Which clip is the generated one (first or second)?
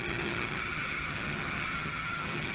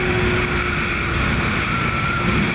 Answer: first